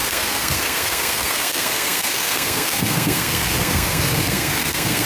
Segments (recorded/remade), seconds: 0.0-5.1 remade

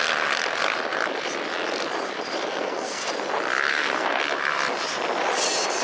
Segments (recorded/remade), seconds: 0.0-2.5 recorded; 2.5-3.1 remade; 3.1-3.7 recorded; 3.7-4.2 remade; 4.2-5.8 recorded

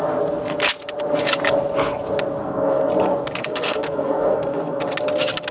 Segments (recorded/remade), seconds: 0.0-2.4 recorded; 2.4-2.9 remade; 2.9-3.4 recorded; 3.4-4.8 remade; 4.8-5.5 recorded